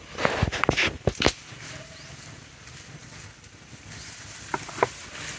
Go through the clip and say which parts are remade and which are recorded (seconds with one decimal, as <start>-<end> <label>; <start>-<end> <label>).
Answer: 0.0-5.4 recorded